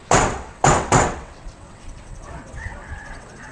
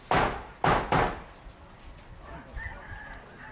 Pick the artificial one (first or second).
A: first